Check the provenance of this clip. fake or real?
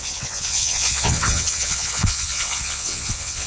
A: fake